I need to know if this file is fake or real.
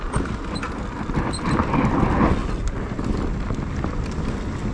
real